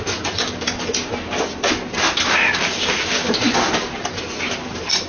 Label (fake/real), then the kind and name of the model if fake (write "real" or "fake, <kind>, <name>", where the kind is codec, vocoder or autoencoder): real